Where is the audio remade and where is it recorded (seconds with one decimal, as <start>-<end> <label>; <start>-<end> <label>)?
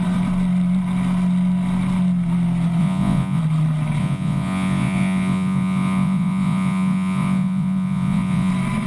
0.0-2.8 recorded; 2.8-3.4 remade; 3.4-4.0 recorded; 4.0-8.5 remade; 8.5-8.9 recorded